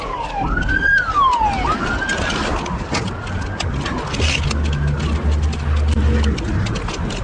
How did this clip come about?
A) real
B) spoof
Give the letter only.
A